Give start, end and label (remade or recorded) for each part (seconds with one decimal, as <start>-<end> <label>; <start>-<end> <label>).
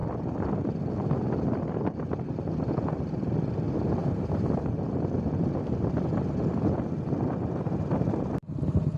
0.0-4.0 recorded; 4.0-4.7 remade; 4.7-9.0 recorded